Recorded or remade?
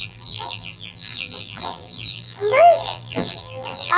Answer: remade